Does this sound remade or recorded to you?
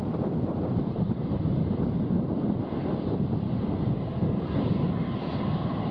recorded